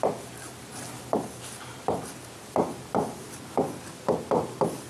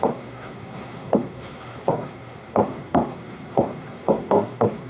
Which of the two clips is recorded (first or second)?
first